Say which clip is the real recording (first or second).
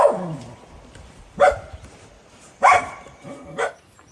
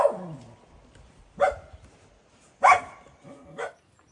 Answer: second